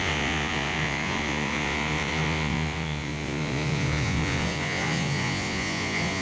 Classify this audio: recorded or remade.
remade